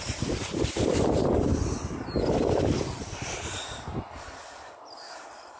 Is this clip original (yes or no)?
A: yes